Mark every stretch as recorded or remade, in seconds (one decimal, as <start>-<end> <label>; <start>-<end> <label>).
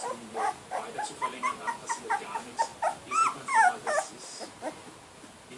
0.0-1.4 remade; 1.4-4.0 recorded; 4.0-4.6 remade; 4.6-5.6 recorded